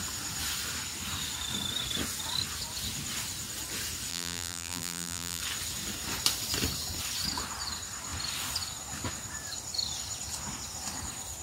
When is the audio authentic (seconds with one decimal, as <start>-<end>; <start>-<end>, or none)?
0.0-4.1; 5.4-11.4